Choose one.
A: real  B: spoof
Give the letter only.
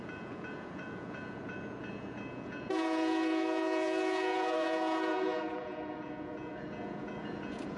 B